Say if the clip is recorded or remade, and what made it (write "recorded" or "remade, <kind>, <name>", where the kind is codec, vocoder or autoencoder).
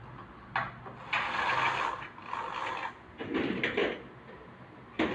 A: recorded